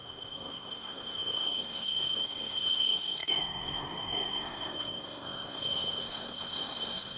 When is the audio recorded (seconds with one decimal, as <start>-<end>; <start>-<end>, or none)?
none